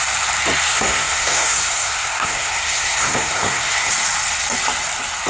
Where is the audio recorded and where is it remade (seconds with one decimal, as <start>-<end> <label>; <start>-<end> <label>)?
0.0-0.7 recorded; 0.7-3.9 remade; 3.9-5.3 recorded